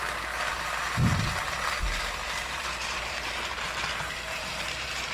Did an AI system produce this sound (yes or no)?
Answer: yes